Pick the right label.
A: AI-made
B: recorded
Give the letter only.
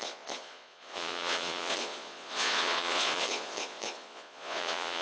A